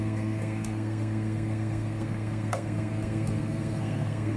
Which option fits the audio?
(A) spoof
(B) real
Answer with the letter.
A